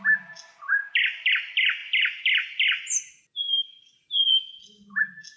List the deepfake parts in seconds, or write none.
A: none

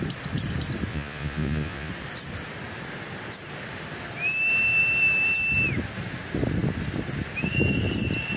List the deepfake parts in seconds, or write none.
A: 0.9-1.9 (vocoder, Vocos)

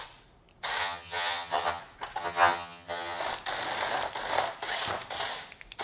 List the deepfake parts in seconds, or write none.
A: 0.8-1.8 (vocoder, HiFi-GAN); 2.2-3.2

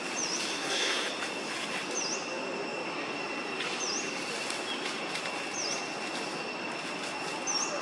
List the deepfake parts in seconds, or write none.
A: 0.5-1.1 (codec, SNAC)

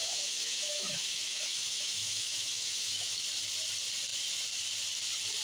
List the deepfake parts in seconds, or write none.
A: 0.0-3.2 (autoencoder, DAC-VAE)

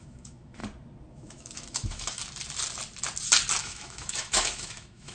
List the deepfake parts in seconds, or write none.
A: 0.0-0.6 (autoencoder, DAC-VAE); 1.1-2.2; 3.6-5.1

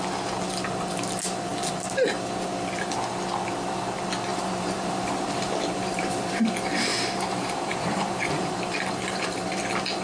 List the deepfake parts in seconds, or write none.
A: 4.3-6.4 (vocoder, BigVGAN v2); 6.9-9.6